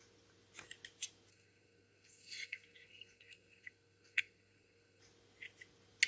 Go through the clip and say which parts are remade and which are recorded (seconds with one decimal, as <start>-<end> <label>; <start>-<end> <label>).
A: 0.0-1.3 recorded; 1.3-5.0 remade; 5.0-6.1 recorded